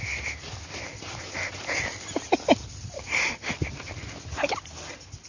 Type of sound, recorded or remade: recorded